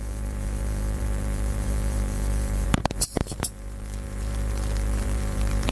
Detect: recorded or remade remade